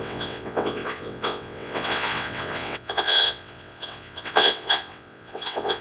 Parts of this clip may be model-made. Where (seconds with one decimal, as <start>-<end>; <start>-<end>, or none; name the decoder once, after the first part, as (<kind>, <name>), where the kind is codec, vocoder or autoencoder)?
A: 0.0-5.8 (vocoder, WaveNeXt)